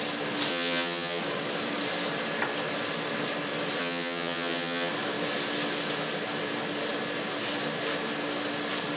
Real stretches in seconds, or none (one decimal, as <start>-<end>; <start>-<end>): 0.0-0.5; 1.2-3.8; 4.9-9.0